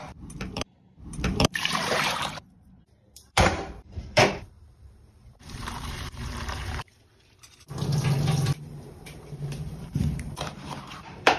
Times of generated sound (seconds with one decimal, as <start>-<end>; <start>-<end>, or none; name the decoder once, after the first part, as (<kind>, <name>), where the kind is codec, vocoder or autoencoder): 0.0-6.9 (vocoder, BigVGAN v2); 8.7-11.4